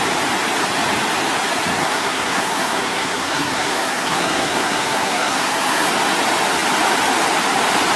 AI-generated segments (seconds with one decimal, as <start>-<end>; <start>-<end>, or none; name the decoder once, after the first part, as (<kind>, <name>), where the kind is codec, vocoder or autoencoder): 1.8-5.9 (codec, SNAC)